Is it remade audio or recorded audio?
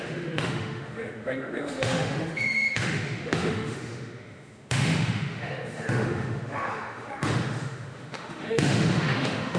remade